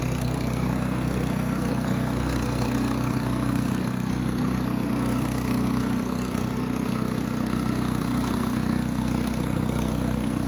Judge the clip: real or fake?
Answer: fake